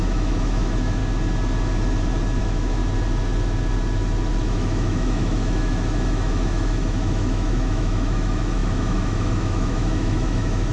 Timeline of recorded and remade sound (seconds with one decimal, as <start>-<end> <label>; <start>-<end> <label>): 0.0-1.0 remade; 1.0-2.4 recorded; 2.4-2.8 remade; 2.8-4.4 recorded; 4.4-10.7 remade